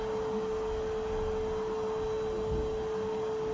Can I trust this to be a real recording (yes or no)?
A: yes